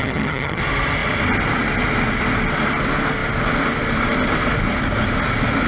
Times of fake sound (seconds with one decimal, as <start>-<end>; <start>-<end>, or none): 0.0-0.6